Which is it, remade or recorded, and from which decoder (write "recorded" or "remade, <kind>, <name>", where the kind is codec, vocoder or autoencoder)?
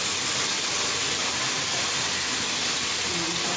remade, vocoder, BigVGAN v2